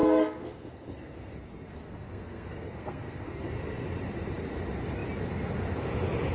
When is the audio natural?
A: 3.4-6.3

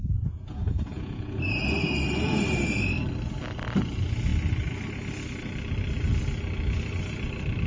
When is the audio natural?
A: 1.4-7.7

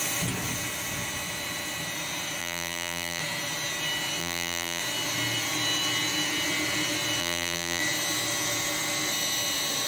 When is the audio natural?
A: 0.0-2.4; 3.2-4.2; 4.8-7.2; 7.8-9.9

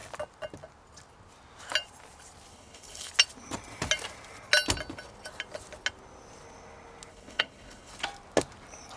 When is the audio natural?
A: 0.0-2.5; 3.1-7.1; 7.9-9.0

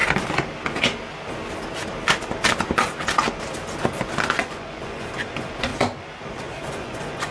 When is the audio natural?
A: 0.0-4.4; 5.7-6.4

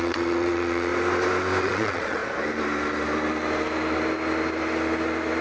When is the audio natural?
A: 0.9-1.6; 2.2-5.4

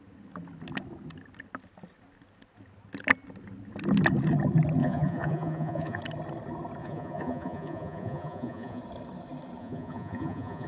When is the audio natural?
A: 0.0-4.8; 6.0-6.8; 8.8-9.6

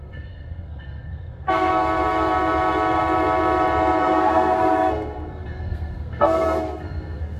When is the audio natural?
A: 1.7-4.0